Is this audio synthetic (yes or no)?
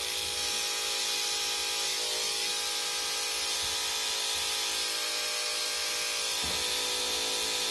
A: no